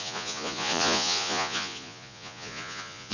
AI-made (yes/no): yes